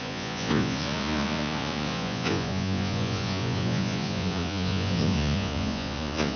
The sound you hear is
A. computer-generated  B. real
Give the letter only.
A